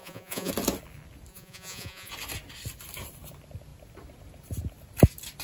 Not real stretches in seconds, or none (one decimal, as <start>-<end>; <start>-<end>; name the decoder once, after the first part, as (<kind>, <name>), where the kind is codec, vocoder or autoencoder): 0.0-0.5 (vocoder, Vocos); 1.3-2.1